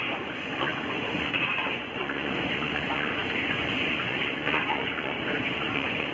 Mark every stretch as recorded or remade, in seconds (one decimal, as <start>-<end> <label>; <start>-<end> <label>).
0.0-6.1 remade